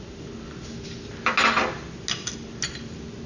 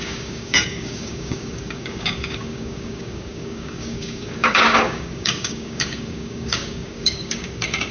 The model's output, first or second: second